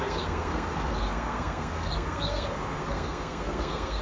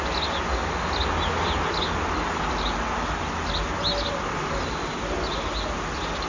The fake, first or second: first